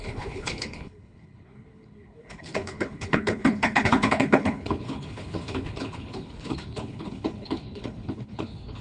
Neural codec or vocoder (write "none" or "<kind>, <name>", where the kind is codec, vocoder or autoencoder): codec, HILCodec